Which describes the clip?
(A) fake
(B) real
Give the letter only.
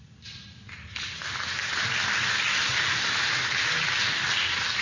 B